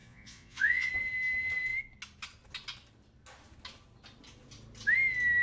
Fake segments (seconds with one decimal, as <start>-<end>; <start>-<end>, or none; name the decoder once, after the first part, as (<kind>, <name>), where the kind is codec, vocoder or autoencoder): 0.0-0.9 (vocoder, Vocos)

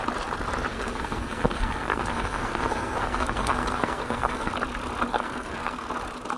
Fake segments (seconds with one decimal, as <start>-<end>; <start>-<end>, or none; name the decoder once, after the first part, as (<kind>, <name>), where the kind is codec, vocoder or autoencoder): 0.7-4.5 (codec, SNAC); 5.1-5.9

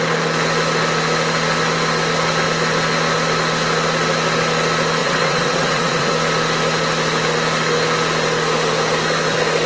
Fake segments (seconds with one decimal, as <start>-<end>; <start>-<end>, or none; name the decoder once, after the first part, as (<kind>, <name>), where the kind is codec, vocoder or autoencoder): 5.0-6.1 (vocoder, WaveNeXt)

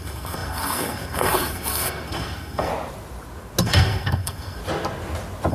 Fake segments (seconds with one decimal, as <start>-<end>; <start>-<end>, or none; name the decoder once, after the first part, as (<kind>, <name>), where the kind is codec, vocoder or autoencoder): 0.0-2.7 (codec, SNAC); 3.6-4.6

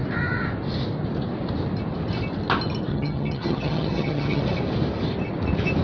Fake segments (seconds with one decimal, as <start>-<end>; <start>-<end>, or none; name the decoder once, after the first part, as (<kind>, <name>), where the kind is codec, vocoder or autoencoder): 2.9-4.4 (vocoder, HiFi-GAN)